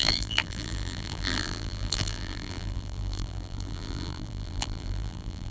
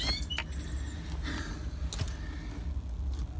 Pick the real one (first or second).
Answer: second